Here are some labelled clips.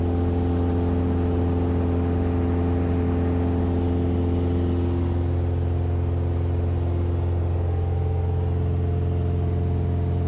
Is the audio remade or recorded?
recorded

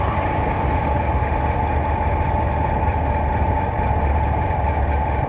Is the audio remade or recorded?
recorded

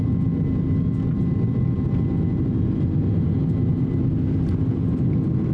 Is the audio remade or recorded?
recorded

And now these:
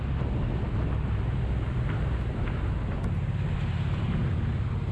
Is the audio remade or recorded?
recorded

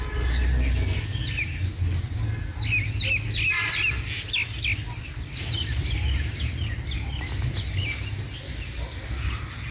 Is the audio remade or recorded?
recorded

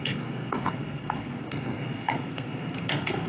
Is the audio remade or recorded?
remade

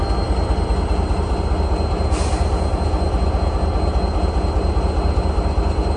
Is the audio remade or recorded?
recorded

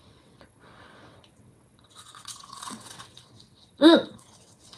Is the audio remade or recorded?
remade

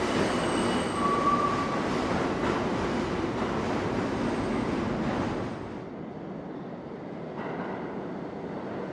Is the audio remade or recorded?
recorded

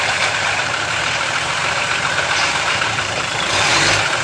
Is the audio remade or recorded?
remade